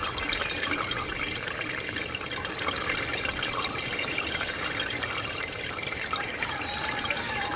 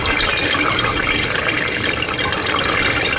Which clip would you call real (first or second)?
second